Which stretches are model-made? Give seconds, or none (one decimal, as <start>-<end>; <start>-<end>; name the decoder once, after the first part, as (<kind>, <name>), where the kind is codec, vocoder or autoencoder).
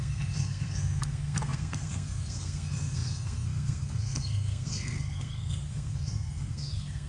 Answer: 0.0-7.1 (codec, SNAC)